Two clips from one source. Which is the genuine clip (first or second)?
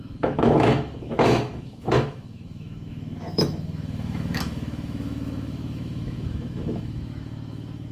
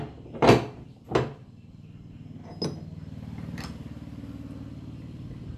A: second